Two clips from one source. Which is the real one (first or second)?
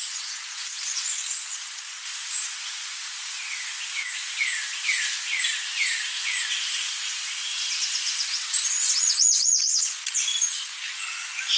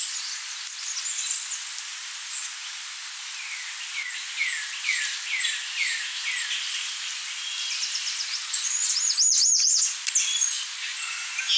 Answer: second